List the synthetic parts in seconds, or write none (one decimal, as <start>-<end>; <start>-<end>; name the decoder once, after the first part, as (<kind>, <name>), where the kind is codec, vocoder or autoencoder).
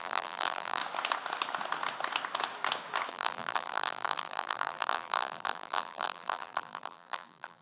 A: 0.0-0.8 (vocoder, BigVGAN v2); 3.1-7.6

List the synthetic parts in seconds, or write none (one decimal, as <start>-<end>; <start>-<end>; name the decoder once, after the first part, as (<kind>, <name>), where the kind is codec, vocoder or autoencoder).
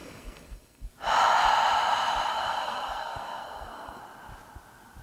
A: 0.0-0.9 (codec, SNAC); 2.3-4.0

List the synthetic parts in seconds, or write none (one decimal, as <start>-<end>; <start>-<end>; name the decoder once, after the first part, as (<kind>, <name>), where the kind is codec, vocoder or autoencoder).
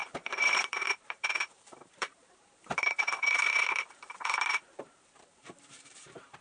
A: 0.0-6.4 (vocoder, BigVGAN v2)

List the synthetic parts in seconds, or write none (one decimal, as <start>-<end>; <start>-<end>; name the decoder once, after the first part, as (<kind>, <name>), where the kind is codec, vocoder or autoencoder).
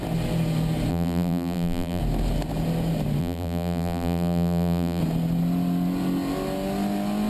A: 0.9-2.0 (vocoder, BigVGAN v2); 3.2-5.0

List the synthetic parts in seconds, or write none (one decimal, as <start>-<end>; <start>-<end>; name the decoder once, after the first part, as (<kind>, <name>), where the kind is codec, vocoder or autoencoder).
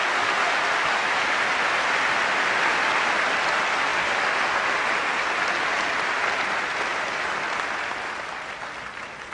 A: none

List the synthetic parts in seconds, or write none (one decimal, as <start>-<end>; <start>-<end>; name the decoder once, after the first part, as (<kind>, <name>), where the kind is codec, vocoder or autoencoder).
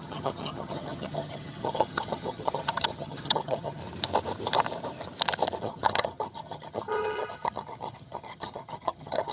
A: 0.0-3.8 (vocoder, HiFi-GAN); 5.6-9.3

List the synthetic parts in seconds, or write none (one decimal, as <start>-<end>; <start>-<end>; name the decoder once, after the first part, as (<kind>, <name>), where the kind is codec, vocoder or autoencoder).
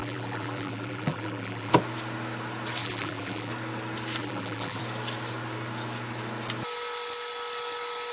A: 0.0-1.7 (vocoder, BigVGAN v2); 2.8-3.5; 4.2-4.8